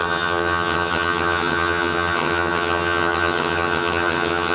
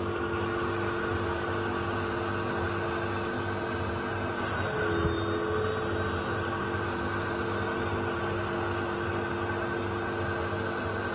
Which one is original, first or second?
second